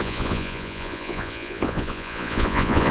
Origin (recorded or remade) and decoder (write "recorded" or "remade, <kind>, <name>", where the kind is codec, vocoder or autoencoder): remade, vocoder, Vocos